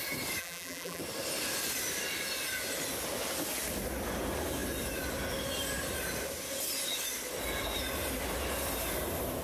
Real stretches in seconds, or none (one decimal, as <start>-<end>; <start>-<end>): 0.0-0.4; 1.0-9.4